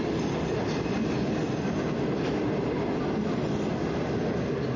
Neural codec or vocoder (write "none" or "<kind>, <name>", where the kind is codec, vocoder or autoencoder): none